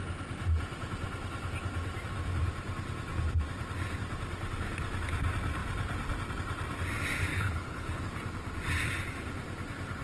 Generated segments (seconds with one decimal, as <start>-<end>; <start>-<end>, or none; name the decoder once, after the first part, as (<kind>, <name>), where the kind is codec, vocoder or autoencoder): 7.3-8.0 (codec, HILCodec)